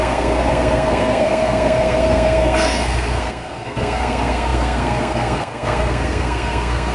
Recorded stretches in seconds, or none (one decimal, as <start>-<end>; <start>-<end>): none